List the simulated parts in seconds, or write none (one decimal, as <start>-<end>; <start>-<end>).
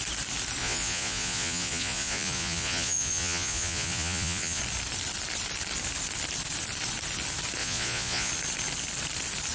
0.6-4.6; 7.6-8.3